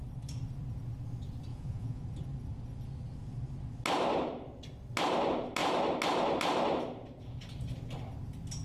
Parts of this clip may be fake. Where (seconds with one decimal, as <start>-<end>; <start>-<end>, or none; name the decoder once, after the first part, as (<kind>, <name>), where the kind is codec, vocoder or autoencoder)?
1.5-2.0 (vocoder, Vocos)